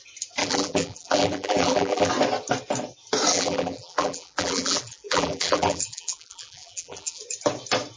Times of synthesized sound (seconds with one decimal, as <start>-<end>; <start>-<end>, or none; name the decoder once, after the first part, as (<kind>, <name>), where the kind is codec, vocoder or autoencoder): 0.4-2.1 (vocoder, BigVGAN v2); 3.3-7.2

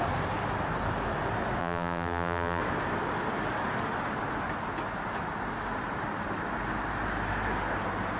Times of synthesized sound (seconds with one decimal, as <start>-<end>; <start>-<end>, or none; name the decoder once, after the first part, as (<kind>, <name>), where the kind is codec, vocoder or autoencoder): 1.6-2.6 (vocoder, BigVGAN v2)